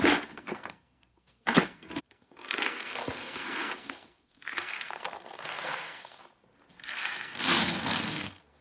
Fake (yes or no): yes